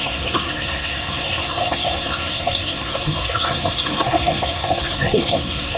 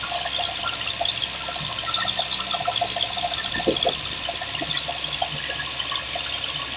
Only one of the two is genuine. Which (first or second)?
second